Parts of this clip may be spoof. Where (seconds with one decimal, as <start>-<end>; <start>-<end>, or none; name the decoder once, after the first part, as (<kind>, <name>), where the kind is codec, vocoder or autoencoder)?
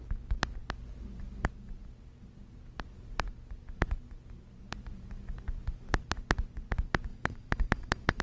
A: 7.1-8.2 (vocoder, Vocos)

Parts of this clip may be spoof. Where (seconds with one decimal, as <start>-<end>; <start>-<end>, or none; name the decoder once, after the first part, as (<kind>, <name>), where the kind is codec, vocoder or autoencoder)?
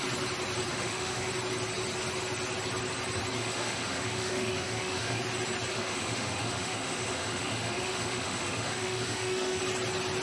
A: 0.7-1.3 (autoencoder, DAC-VAE); 3.4-5.2; 5.7-9.6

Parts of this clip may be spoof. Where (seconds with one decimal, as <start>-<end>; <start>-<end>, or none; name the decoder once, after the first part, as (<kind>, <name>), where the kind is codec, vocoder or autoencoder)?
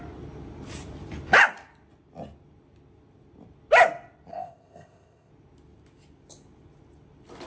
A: 4.3-5.3 (codec, ZipCodec)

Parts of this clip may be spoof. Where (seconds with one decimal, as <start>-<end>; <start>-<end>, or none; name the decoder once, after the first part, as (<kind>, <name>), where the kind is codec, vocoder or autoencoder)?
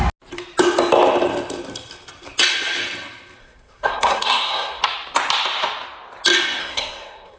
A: 3.4-4.8 (codec, SNAC); 6.6-7.4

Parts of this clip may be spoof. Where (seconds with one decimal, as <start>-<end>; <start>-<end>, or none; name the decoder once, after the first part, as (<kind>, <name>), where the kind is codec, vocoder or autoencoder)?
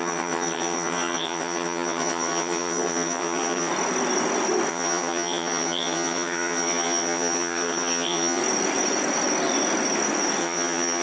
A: 0.0-3.7 (vocoder, HiFi-GAN); 4.7-8.4; 10.4-11.0